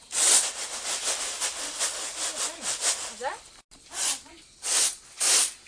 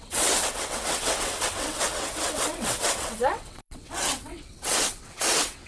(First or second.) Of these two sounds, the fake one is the second